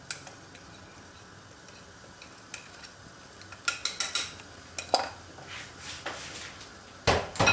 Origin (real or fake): real